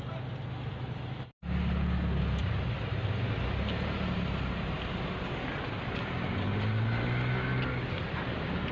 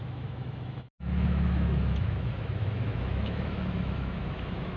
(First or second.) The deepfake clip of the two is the second